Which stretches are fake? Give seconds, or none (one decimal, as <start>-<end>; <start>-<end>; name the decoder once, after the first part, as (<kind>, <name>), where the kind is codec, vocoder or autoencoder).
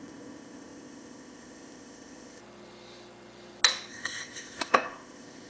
0.0-2.4 (codec, ZipCodec); 3.9-5.5